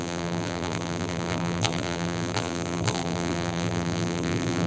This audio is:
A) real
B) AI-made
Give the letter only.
B